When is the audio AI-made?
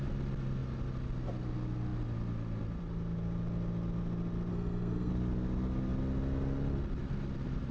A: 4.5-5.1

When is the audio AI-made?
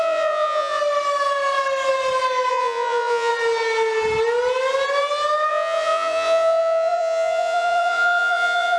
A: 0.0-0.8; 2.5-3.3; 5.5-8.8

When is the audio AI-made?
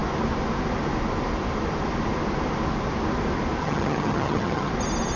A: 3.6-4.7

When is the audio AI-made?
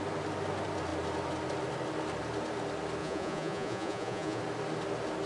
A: 3.0-4.4